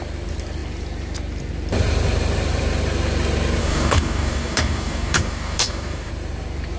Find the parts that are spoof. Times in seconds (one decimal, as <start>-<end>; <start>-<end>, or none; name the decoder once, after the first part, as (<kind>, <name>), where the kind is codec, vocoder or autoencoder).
3.6-6.1 (codec, DAC)